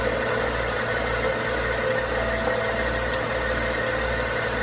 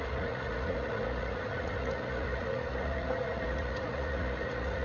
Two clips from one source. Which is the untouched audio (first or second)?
first